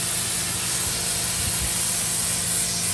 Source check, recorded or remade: recorded